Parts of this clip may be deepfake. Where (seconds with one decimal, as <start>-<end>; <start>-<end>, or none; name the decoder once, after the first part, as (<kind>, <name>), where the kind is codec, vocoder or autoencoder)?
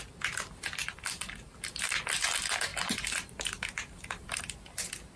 0.8-2.0 (vocoder, BigVGAN v2); 2.7-4.4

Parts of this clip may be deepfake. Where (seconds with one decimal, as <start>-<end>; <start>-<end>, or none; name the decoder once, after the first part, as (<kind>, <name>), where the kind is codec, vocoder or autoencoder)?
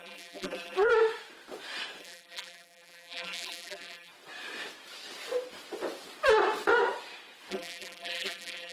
0.0-0.9 (vocoder, BigVGAN v2); 2.0-4.1; 7.5-8.7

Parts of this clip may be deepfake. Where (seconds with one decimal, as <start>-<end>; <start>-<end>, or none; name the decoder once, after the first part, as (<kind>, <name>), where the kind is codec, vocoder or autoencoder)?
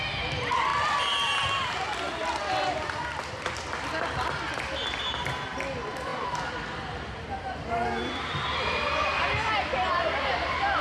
0.7-1.7 (vocoder, BigVGAN v2); 6.1-8.9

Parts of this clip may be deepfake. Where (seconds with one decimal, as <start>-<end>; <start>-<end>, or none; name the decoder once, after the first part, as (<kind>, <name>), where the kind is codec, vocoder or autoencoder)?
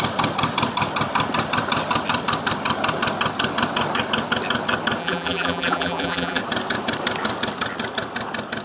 5.0-6.4 (vocoder, BigVGAN v2)